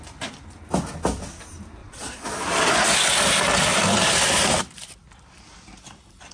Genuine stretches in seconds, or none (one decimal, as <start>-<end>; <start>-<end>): 0.0-1.8; 2.4-6.3